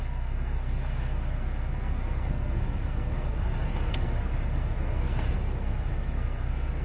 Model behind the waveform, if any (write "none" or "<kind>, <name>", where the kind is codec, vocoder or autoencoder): codec, SNAC